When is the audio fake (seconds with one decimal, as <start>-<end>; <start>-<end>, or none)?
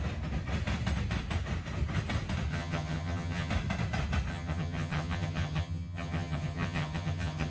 2.5-3.5; 4.3-7.5